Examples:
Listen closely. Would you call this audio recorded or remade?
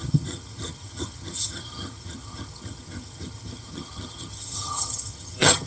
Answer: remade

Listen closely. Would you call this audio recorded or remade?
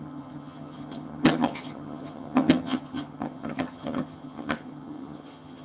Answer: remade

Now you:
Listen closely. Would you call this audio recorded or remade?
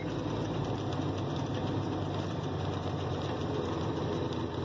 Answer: recorded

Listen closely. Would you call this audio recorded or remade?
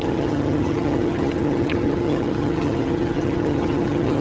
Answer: remade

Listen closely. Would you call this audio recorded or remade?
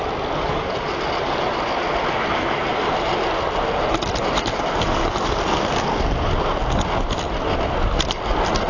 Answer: recorded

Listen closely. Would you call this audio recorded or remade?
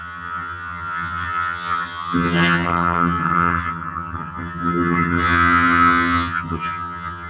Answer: remade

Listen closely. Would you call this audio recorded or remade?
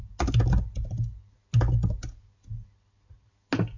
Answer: recorded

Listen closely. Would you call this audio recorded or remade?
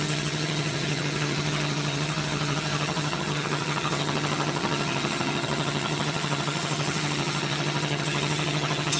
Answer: remade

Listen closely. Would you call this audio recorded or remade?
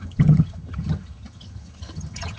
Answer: remade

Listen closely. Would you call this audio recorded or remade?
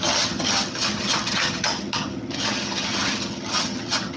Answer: remade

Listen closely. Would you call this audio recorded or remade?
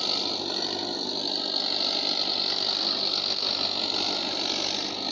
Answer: recorded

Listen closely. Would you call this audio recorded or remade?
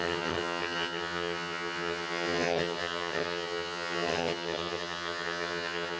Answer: remade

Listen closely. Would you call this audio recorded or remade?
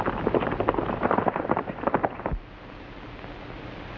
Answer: recorded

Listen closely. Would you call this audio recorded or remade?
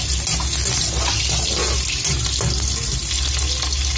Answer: recorded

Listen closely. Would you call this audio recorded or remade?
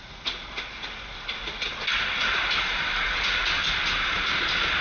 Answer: recorded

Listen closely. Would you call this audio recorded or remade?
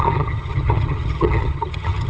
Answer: remade